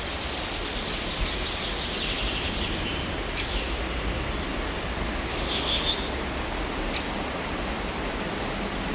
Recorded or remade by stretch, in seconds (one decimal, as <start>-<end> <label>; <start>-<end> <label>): 0.0-5.3 recorded; 5.3-5.9 remade; 5.9-8.9 recorded